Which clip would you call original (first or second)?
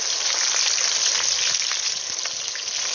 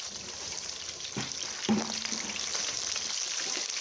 first